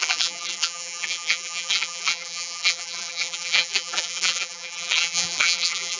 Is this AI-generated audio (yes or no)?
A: yes